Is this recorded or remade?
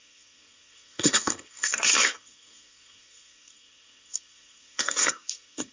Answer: remade